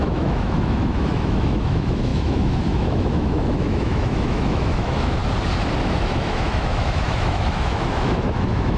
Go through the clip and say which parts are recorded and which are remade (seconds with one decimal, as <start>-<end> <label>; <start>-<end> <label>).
0.0-5.2 remade; 5.2-5.8 recorded; 5.8-8.8 remade